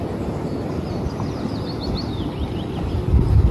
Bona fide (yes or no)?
yes